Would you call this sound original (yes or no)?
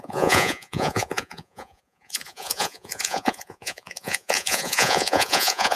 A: no